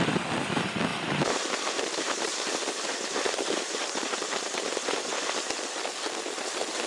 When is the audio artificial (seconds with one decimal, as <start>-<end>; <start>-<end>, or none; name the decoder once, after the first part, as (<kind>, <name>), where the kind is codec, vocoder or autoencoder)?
0.9-5.0 (vocoder, BigVGAN v2)

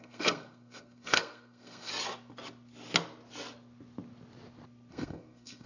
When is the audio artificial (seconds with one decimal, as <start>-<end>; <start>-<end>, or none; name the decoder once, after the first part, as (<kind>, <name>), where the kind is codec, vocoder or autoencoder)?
0.0-1.9 (codec, SNAC); 4.9-5.7

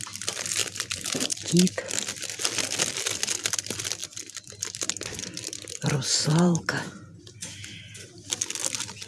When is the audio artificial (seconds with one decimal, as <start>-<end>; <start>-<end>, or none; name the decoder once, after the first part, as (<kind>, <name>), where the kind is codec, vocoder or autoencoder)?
0.6-1.5 (vocoder, BigVGAN v2); 6.3-7.2

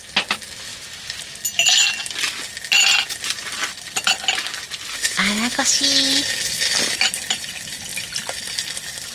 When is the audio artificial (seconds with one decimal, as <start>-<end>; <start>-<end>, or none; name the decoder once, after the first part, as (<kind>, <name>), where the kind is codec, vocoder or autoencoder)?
4.9-5.7 (autoencoder, DAC-VAE)

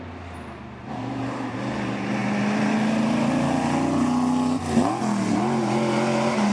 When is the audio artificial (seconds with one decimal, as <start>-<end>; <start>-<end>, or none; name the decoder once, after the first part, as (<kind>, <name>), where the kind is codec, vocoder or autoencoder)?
none